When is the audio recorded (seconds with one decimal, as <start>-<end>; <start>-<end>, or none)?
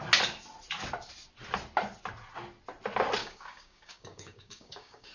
0.0-3.2